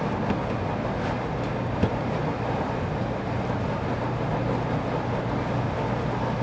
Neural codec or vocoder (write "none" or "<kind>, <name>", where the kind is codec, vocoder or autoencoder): none